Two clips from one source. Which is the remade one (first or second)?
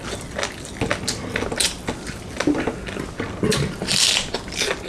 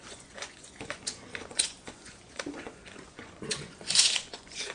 second